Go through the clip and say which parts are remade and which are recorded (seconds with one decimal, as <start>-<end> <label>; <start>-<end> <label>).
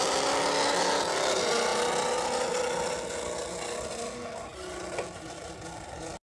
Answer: 0.0-6.4 recorded